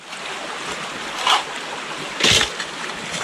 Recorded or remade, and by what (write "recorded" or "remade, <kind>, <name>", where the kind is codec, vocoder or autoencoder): recorded